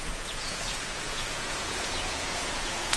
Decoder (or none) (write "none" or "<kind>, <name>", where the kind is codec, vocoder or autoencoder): vocoder, Vocos